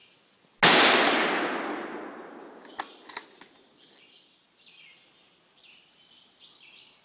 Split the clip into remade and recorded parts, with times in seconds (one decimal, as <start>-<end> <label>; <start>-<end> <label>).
0.0-7.0 recorded